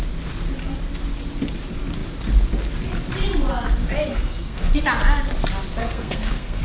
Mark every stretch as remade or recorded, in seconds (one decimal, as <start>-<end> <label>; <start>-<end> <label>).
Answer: 0.0-4.1 recorded; 4.1-4.8 remade; 4.8-5.8 recorded; 5.8-6.6 remade